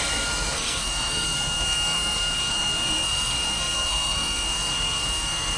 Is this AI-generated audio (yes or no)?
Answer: yes